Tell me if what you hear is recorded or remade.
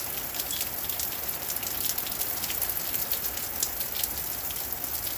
recorded